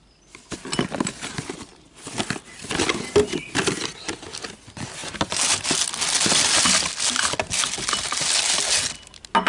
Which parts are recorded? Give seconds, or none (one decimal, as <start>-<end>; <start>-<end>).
0.0-9.5